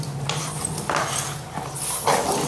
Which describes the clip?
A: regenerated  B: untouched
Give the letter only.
B